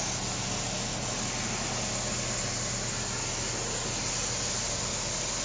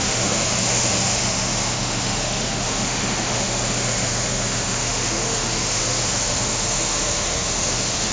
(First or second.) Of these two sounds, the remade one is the second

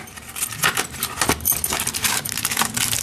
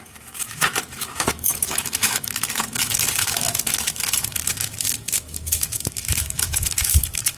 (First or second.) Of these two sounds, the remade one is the second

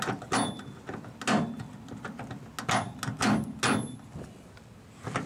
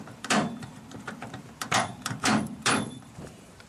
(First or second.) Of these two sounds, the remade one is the second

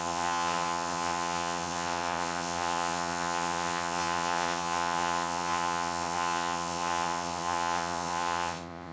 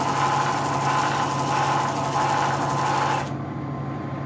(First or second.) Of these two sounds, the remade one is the first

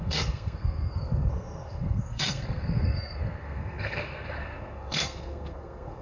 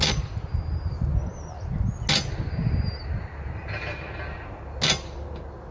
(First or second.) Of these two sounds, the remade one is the first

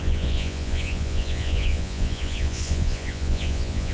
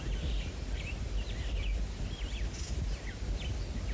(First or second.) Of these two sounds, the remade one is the first